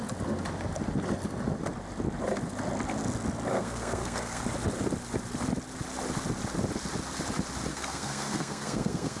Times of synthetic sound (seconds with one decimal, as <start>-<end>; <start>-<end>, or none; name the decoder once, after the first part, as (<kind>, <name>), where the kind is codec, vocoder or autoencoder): 3.5-4.4 (codec, SNAC); 7.7-9.2